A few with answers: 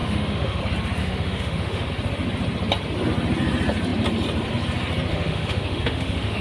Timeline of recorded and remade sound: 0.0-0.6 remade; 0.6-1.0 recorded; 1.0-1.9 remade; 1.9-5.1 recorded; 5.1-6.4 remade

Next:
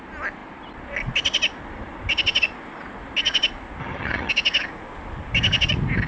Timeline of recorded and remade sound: 0.0-3.8 recorded; 3.8-4.3 remade; 4.3-6.1 recorded

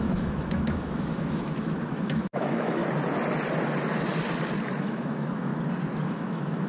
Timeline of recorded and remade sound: 0.0-2.8 remade; 2.8-4.8 recorded; 4.8-5.5 remade; 5.5-6.1 recorded; 6.1-6.7 remade

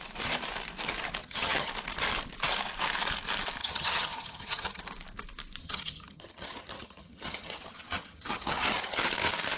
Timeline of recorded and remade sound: 0.0-1.2 recorded; 1.2-1.7 remade; 1.7-3.6 recorded; 3.6-4.8 remade; 4.8-5.6 recorded; 5.6-9.0 remade; 9.0-9.6 recorded

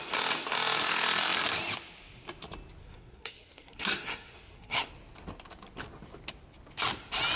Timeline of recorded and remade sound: 0.0-2.8 recorded; 2.8-4.9 remade; 4.9-7.4 recorded

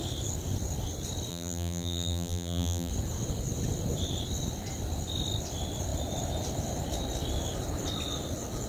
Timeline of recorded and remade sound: 0.0-1.3 recorded; 1.3-2.9 remade; 2.9-8.7 recorded